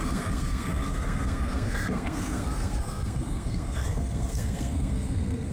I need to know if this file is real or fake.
fake